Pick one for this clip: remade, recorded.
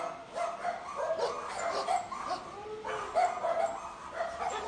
recorded